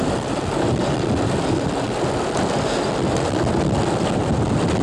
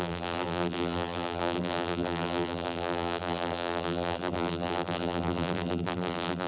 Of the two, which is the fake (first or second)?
second